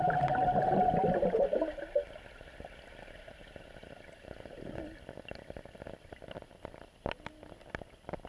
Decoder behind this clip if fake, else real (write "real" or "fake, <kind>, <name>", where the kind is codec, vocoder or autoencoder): real